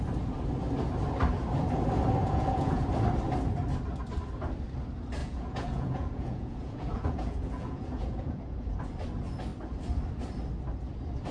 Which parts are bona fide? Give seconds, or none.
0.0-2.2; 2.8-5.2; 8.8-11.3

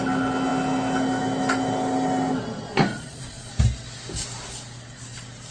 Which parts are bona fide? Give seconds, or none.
0.0-2.9; 3.5-5.5

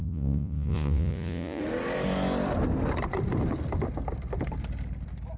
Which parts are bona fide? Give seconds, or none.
1.6-5.4